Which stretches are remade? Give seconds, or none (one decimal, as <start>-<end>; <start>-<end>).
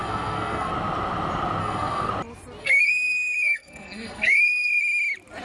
0.0-0.7; 1.6-2.1; 2.6-4.8